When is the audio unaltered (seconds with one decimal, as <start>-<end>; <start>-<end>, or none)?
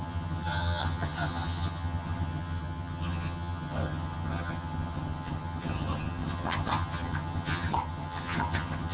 none